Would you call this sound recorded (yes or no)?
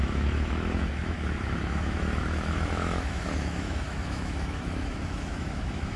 no